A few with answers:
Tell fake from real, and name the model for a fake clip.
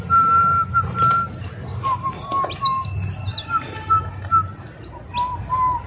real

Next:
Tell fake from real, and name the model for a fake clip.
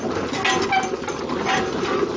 real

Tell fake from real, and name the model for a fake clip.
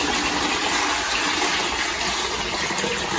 real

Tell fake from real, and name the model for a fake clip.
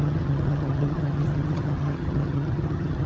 fake, vocoder, HiFi-GAN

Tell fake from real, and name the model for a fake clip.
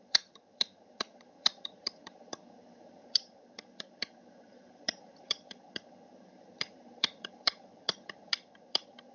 fake, vocoder, HiFi-GAN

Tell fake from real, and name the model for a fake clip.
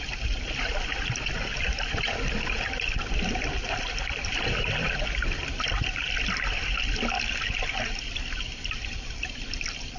real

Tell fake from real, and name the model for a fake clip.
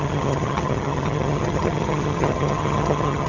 fake, vocoder, HiFi-GAN